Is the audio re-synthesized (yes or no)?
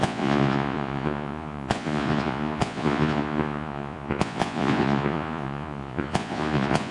yes